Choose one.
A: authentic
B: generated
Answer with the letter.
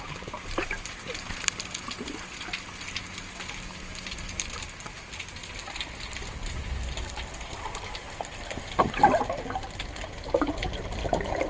A